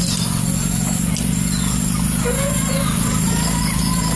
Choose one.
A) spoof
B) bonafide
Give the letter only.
B